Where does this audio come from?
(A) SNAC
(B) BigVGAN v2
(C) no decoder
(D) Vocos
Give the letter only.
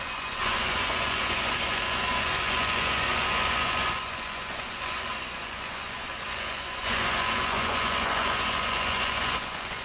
D